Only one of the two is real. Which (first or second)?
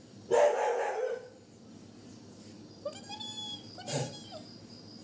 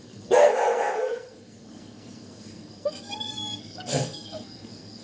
first